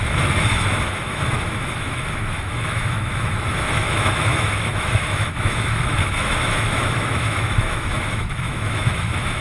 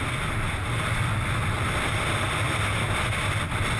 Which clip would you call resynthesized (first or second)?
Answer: first